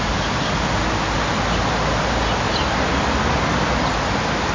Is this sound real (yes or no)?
yes